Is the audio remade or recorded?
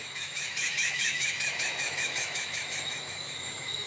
remade